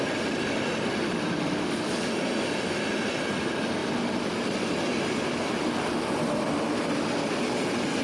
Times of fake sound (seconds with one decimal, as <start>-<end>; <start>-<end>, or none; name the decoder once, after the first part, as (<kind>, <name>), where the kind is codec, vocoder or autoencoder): none